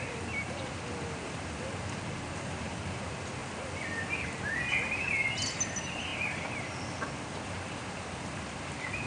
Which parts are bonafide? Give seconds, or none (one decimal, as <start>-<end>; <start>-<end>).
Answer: 0.0-9.1